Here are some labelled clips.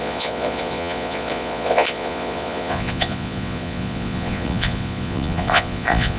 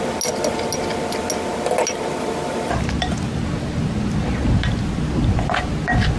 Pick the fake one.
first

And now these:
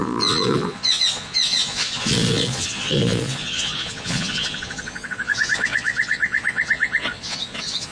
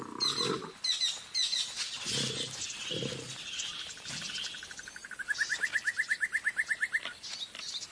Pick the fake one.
first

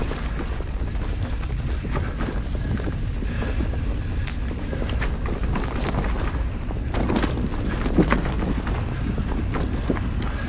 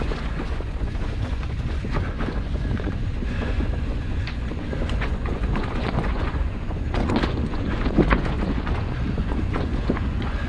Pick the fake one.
second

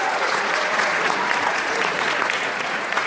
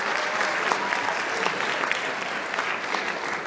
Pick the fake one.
first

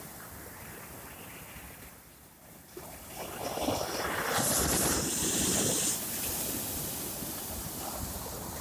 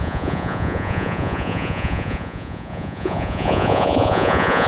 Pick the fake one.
second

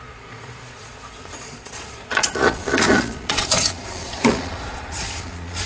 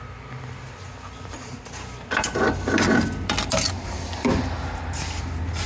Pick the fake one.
first